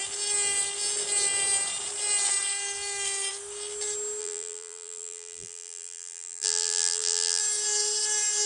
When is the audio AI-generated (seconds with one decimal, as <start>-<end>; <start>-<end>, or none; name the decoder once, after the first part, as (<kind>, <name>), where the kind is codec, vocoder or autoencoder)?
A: 4.2-7.4 (vocoder, BigVGAN v2)